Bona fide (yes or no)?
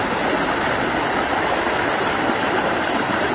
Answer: yes